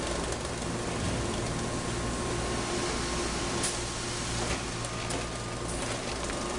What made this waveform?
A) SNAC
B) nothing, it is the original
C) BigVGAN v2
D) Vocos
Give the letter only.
B